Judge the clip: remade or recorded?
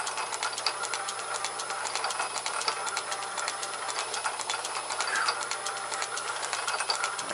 recorded